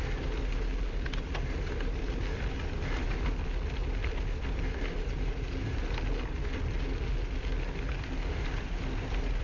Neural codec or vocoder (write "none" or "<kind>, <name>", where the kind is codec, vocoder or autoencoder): none